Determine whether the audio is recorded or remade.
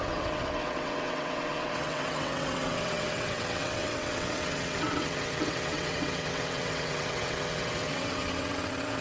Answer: remade